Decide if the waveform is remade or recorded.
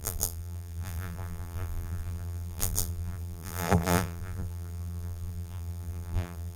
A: remade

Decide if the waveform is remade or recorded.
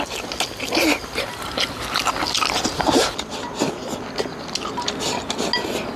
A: recorded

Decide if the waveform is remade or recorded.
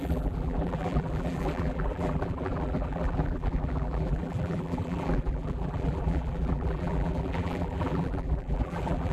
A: remade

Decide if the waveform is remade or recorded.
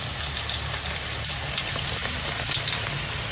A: recorded